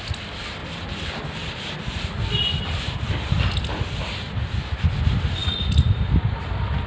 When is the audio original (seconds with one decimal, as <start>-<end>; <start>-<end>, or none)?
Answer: 0.0-0.6; 3.1-6.9